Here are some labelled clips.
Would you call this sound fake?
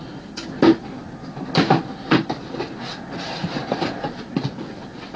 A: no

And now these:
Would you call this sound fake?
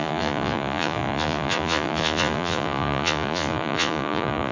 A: yes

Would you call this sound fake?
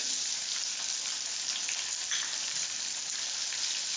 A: no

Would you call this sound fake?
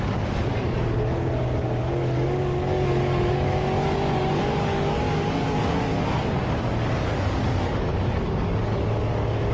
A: yes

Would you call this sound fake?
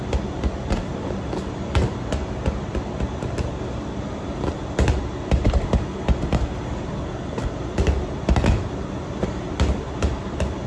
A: no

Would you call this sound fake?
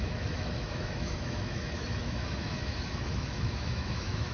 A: yes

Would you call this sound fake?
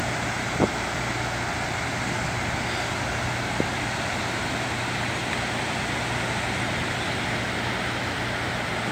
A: no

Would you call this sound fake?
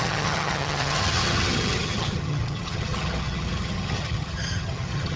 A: yes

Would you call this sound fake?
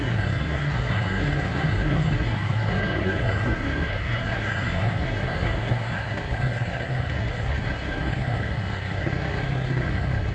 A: yes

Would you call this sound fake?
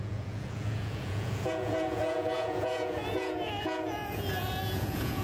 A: yes